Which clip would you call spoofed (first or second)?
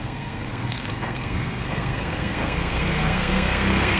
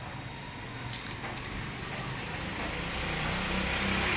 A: first